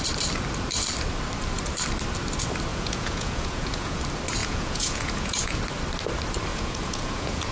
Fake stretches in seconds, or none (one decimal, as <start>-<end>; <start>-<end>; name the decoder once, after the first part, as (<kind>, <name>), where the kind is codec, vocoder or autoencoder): 2.7-4.0 (vocoder, Vocos); 4.4-5.6; 6.5-7.5